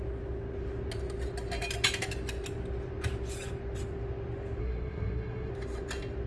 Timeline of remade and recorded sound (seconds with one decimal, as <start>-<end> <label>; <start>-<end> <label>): 0.0-4.6 recorded; 4.6-5.5 remade; 5.5-6.3 recorded